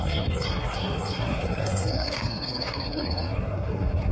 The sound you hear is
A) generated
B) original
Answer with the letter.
A